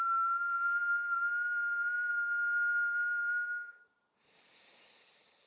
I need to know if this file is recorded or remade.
recorded